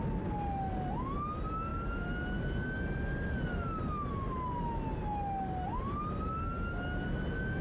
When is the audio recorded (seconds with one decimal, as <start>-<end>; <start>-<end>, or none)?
0.0-7.6